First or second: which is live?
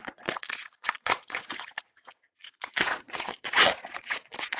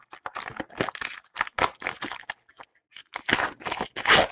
second